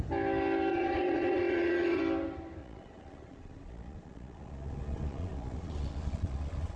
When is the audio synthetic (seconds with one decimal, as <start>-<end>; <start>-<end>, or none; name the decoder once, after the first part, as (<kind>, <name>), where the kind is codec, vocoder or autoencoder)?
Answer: 0.7-2.0 (vocoder, Vocos); 2.6-6.8